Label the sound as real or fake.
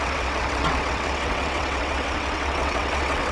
fake